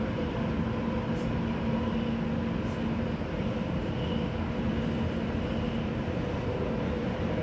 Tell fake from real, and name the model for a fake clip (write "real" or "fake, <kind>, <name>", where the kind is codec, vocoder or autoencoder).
real